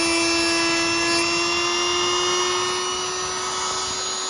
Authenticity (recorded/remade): recorded